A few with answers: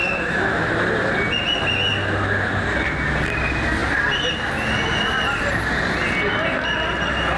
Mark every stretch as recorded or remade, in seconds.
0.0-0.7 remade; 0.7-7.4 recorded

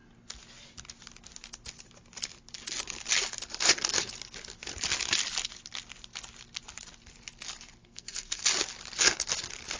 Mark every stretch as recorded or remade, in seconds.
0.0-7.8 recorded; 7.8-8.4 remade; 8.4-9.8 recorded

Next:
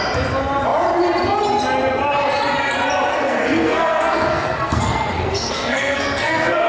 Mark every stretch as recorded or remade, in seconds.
0.0-3.1 recorded; 3.1-6.7 remade

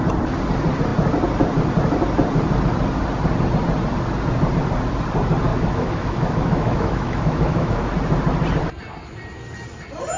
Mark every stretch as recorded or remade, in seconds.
0.0-5.5 recorded; 5.5-7.9 remade; 7.9-10.2 recorded

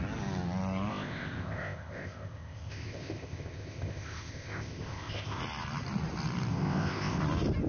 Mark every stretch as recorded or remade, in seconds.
0.0-0.9 recorded; 0.9-5.4 remade; 5.4-6.5 recorded; 6.5-7.2 remade; 7.2-7.7 recorded